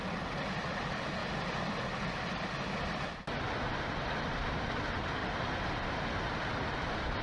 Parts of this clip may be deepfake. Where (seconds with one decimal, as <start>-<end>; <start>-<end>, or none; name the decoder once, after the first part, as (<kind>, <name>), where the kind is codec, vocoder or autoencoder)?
0.0-1.2 (vocoder, BigVGAN v2); 3.6-5.2; 5.8-7.2